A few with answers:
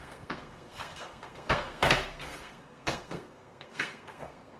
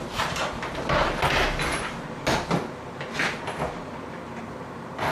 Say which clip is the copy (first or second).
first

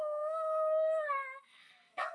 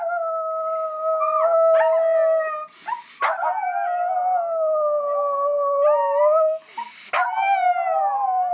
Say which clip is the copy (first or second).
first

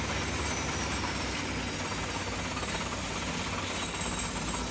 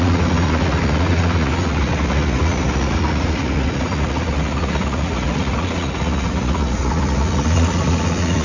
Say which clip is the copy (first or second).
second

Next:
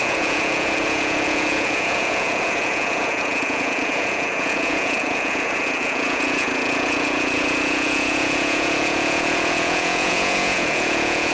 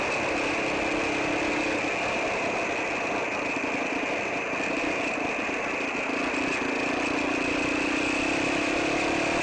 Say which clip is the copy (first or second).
first